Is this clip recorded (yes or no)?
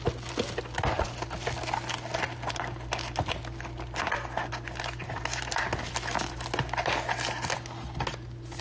yes